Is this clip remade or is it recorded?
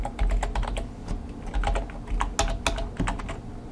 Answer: recorded